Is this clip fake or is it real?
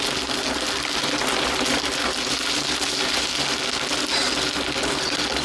real